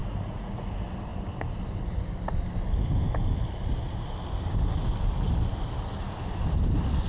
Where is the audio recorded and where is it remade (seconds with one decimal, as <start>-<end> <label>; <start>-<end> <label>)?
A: 0.0-0.7 remade; 0.7-7.1 recorded